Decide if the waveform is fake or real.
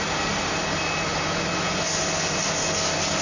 real